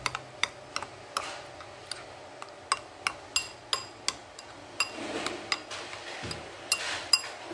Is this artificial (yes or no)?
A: no